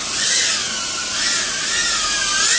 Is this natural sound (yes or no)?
yes